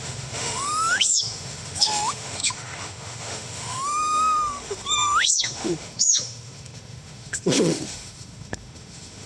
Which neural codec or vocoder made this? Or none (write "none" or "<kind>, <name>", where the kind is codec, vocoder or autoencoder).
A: autoencoder, DAC-VAE